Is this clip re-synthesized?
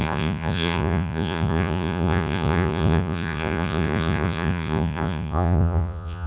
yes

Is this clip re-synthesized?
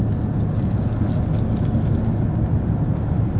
no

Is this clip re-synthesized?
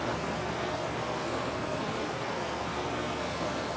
yes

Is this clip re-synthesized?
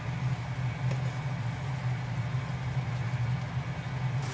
no